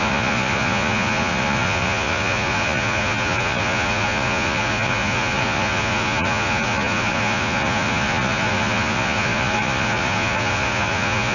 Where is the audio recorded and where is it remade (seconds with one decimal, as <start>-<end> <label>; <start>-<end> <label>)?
0.0-11.3 remade